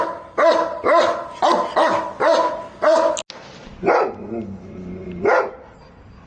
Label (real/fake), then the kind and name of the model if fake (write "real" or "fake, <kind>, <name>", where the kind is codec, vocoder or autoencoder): real